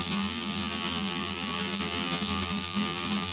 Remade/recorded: remade